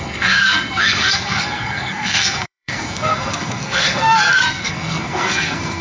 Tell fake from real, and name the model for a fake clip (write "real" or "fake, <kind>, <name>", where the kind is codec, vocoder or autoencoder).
fake, codec, SNAC